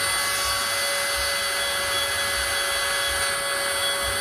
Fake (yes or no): no